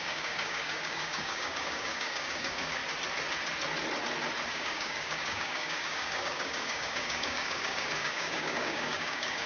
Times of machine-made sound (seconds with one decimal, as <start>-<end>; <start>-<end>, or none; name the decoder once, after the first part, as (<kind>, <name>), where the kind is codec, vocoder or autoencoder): 0.0-2.8 (codec, DAC); 4.5-9.5